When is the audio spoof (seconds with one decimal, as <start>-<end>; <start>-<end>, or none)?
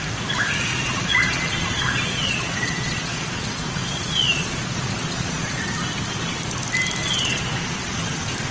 0.7-5.6; 7.0-8.0